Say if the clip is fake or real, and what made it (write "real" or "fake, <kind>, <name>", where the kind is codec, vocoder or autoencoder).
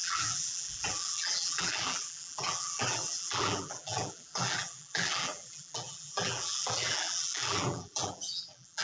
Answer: fake, vocoder, BigVGAN v2